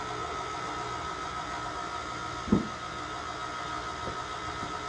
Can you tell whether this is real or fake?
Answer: real